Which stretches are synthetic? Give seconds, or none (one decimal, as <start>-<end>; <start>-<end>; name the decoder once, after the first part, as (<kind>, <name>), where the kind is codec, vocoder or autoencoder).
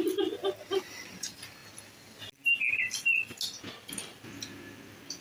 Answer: none